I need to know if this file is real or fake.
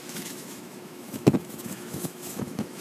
fake